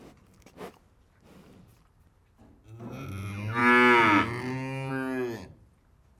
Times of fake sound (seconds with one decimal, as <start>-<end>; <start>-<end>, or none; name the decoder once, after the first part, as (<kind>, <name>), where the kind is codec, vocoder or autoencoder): none